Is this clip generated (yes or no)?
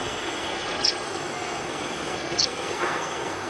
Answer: yes